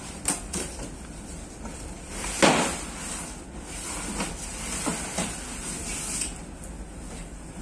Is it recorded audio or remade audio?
recorded